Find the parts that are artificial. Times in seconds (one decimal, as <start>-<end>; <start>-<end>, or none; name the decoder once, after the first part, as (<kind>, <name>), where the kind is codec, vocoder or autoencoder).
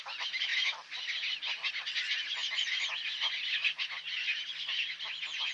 none